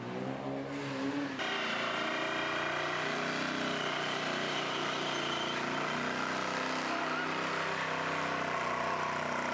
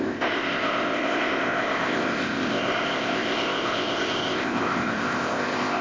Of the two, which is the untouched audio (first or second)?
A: first